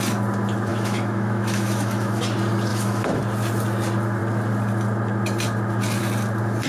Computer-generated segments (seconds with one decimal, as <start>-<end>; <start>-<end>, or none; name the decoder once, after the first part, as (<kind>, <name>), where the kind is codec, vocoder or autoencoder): 0.7-2.2 (autoencoder, DAC-VAE); 2.7-3.2